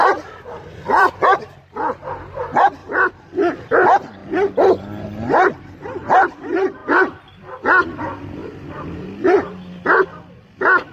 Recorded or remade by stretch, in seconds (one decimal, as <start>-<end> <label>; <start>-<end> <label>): 0.0-2.8 remade; 2.8-3.6 recorded; 3.6-4.2 remade; 4.2-5.6 recorded; 5.6-6.8 remade; 6.8-8.0 recorded; 8.0-8.4 remade; 8.4-10.4 recorded; 10.4-10.9 remade